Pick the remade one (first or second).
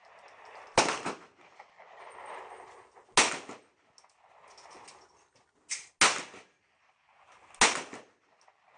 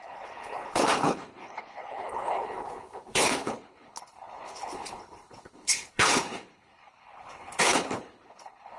second